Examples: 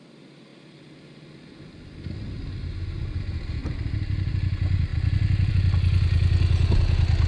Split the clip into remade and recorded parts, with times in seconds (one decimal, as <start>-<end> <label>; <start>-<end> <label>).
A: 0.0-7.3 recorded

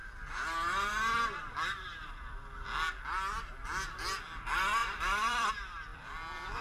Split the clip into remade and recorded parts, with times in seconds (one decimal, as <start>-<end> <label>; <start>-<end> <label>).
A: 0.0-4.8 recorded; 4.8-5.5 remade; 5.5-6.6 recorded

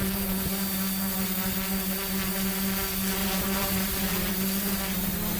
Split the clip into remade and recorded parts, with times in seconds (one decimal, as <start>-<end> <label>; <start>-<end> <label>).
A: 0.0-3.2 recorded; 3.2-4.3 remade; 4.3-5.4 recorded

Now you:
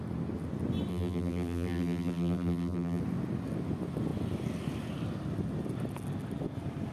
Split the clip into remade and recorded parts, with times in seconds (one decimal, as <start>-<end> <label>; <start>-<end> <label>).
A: 0.0-0.9 recorded; 0.9-3.0 remade; 3.0-6.9 recorded

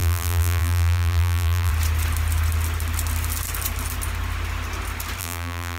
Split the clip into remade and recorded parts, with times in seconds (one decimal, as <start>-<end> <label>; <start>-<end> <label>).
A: 0.0-1.7 remade; 1.7-5.2 recorded; 5.2-5.8 remade

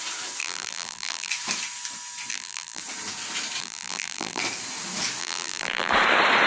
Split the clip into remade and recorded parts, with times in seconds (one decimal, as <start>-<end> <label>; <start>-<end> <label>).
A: 0.0-0.4 recorded; 0.4-1.3 remade; 1.3-2.3 recorded; 2.3-2.8 remade; 2.8-3.6 recorded; 3.6-4.4 remade; 4.4-5.2 recorded; 5.2-5.9 remade; 5.9-6.5 recorded

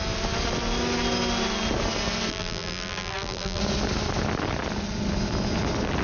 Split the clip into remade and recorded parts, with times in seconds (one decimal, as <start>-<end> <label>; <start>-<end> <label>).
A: 0.0-2.3 recorded; 2.3-3.6 remade; 3.6-6.0 recorded

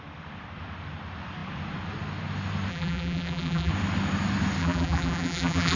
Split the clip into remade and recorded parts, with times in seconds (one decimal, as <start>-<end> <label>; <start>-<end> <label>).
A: 0.0-2.7 recorded; 2.7-3.7 remade; 3.7-4.6 recorded; 4.6-5.8 remade